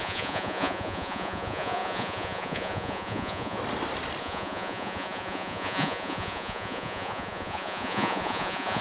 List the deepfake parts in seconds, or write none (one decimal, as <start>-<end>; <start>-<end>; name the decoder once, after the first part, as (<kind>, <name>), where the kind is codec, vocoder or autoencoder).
0.0-3.6 (vocoder, Vocos); 4.2-8.8